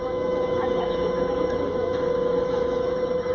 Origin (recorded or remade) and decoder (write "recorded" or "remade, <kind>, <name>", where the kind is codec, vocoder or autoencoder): remade, autoencoder, DAC-VAE